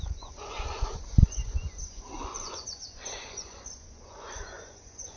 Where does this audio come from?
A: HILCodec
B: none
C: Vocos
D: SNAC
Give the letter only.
C